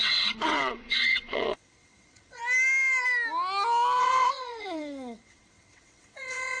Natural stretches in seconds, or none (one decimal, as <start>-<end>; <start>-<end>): 2.4-4.0